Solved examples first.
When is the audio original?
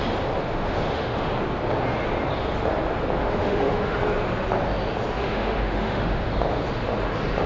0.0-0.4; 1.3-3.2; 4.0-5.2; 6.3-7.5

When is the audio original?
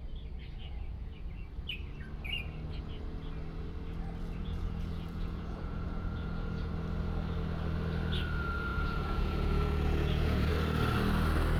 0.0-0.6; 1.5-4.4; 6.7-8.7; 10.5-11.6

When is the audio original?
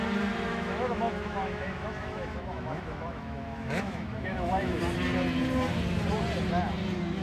0.0-0.5; 4.8-7.2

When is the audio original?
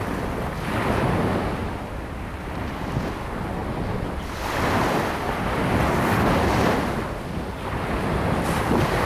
0.0-1.6; 2.7-9.1